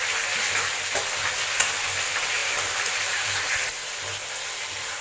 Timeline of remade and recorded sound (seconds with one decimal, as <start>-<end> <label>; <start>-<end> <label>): 0.0-2.4 recorded; 2.4-3.5 remade; 3.5-4.1 recorded; 4.1-5.0 remade